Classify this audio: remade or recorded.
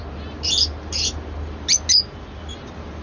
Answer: recorded